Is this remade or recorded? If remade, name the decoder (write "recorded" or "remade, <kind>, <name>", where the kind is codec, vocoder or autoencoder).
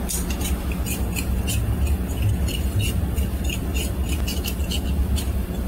recorded